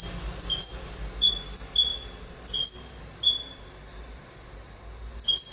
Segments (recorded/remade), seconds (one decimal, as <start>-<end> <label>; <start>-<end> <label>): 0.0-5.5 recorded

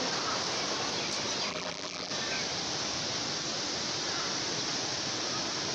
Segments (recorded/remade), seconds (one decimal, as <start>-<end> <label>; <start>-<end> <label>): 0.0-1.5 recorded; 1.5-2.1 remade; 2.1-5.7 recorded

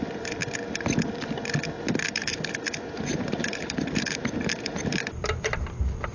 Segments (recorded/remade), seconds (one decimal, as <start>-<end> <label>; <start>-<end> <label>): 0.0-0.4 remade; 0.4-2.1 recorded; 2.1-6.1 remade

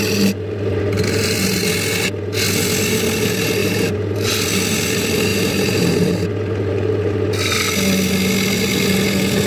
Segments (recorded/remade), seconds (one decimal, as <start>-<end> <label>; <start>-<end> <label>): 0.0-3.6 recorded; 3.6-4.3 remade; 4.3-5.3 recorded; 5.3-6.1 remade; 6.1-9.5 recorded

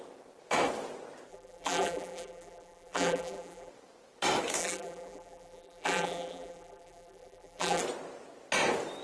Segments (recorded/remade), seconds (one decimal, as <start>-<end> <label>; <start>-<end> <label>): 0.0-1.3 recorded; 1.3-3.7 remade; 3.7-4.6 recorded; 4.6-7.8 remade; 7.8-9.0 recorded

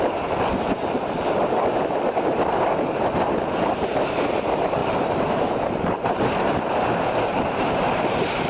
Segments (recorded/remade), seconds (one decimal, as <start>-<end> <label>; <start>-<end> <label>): 0.0-4.8 recorded; 4.8-6.2 remade; 6.2-7.3 recorded; 7.3-8.5 remade